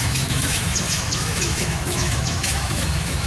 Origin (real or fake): fake